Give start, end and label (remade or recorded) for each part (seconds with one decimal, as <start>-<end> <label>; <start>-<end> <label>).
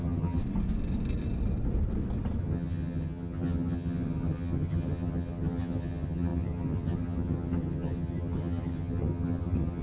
0.0-0.4 remade; 0.4-2.4 recorded; 2.4-9.8 remade